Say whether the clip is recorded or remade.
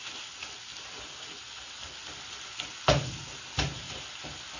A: recorded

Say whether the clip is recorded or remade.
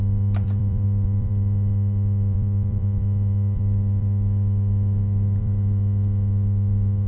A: remade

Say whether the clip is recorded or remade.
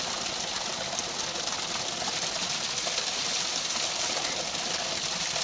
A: recorded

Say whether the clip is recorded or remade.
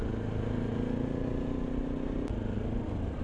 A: recorded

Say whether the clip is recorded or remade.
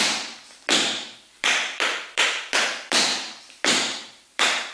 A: remade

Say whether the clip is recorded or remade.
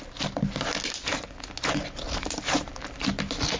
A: recorded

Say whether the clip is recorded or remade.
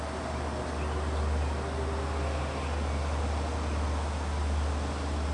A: recorded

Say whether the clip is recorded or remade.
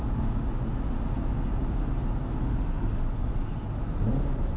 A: recorded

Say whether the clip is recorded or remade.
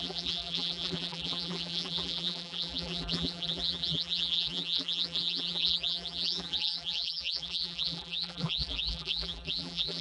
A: remade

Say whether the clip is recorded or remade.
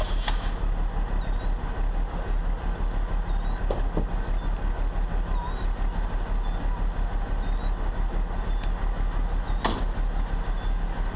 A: recorded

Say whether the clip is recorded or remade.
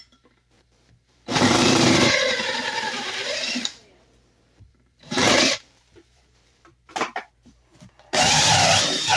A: remade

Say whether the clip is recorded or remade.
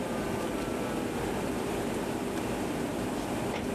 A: remade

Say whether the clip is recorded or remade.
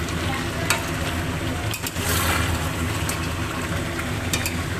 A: recorded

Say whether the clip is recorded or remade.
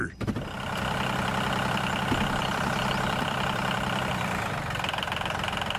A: remade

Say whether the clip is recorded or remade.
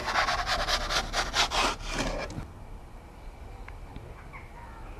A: recorded